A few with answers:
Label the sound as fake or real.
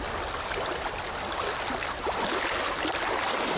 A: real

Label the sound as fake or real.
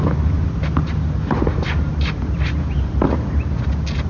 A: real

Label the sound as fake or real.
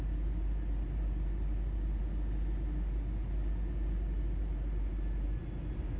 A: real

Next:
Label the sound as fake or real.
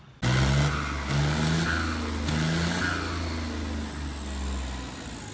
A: real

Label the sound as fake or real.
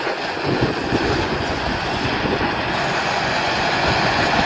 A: fake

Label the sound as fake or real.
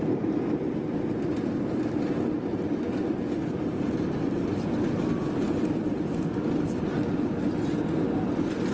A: real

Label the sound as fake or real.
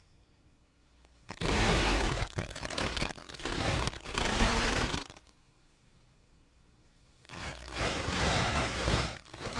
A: fake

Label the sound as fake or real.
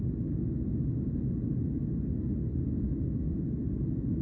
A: real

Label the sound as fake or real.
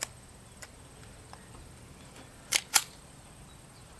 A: fake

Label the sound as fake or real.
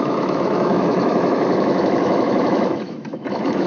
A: fake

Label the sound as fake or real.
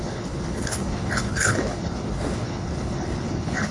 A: fake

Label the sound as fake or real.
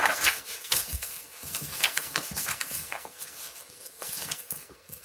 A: fake